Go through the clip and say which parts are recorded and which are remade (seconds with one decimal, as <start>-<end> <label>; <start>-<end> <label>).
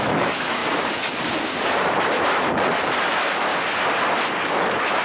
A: 0.0-0.6 remade; 0.6-3.1 recorded; 3.1-3.5 remade; 3.5-4.5 recorded; 4.5-5.0 remade